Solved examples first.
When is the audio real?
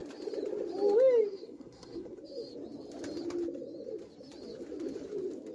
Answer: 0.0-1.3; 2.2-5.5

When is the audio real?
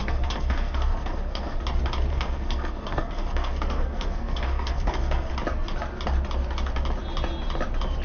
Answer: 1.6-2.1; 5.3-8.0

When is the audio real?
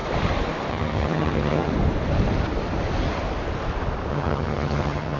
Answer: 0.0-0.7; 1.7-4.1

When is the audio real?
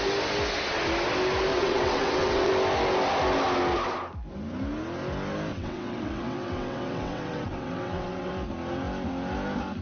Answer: 0.0-1.5; 2.5-5.5; 8.3-9.8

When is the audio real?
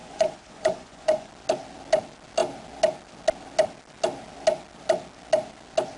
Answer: 1.3-6.0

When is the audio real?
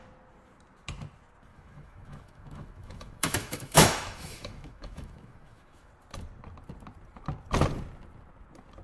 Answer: 0.0-1.5; 5.9-8.8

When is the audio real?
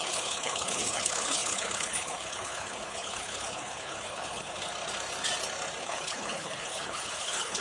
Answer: 4.7-5.8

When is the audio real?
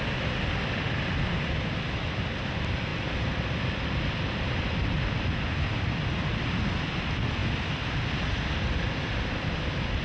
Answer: 0.0-10.0